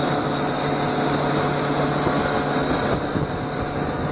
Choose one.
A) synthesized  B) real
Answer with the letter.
B